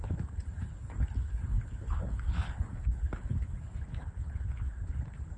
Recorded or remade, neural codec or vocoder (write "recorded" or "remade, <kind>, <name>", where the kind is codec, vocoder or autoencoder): remade, codec, HILCodec